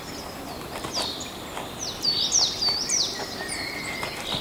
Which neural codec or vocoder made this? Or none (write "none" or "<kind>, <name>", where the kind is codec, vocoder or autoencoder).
vocoder, BigVGAN v2